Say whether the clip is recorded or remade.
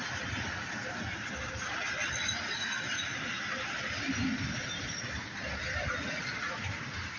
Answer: recorded